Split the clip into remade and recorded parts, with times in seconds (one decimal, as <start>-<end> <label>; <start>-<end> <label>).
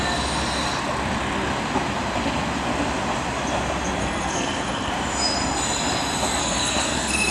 0.0-4.0 recorded; 4.0-4.9 remade; 4.9-6.4 recorded; 6.4-7.3 remade